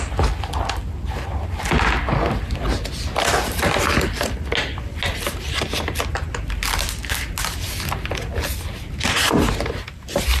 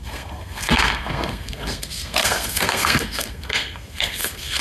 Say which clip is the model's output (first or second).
second